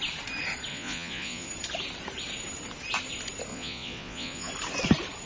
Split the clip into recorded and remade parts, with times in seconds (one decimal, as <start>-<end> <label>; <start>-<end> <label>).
0.0-0.7 recorded; 0.7-1.5 remade; 1.5-3.5 recorded; 3.5-4.5 remade; 4.5-5.3 recorded